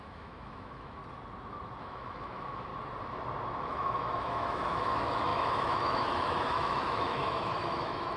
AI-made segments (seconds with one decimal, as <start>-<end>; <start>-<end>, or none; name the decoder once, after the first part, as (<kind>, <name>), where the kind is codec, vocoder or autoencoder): 0.0-1.0 (autoencoder, DAC-VAE); 1.8-2.7; 3.6-8.2